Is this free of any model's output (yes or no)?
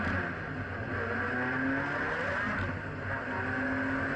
yes